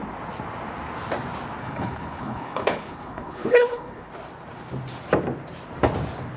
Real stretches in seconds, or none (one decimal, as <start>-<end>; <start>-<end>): 0.0-1.6; 4.1-6.4